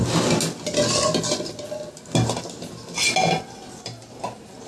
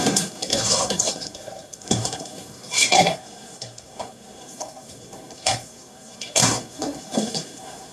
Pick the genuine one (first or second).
first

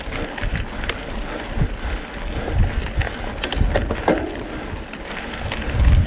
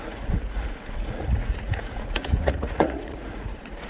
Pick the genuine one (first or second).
first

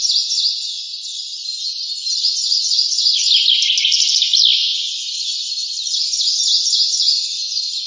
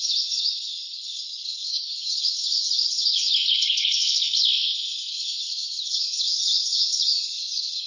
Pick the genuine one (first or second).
first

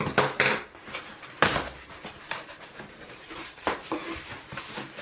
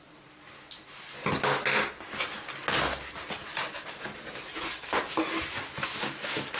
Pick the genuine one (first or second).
second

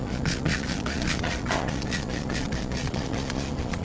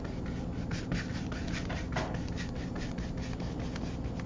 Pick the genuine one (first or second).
second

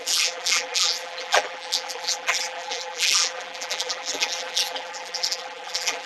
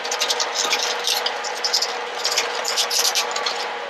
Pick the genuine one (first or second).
second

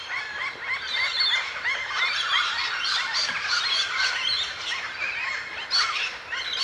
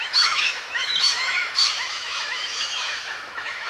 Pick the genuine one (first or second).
first